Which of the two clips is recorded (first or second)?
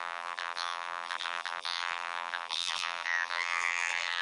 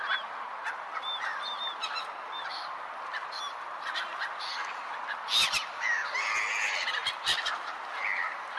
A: second